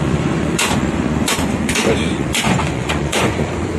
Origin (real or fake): fake